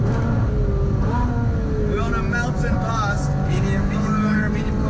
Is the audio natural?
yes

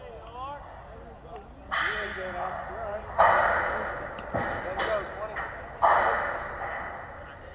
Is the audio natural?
yes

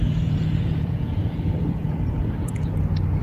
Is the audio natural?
no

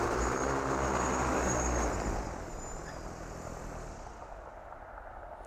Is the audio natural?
yes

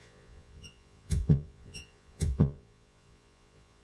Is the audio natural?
no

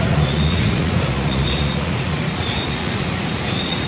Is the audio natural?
no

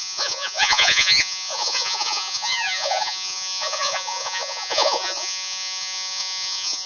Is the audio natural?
no